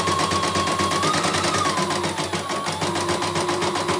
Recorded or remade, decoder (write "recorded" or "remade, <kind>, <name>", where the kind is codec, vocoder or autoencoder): recorded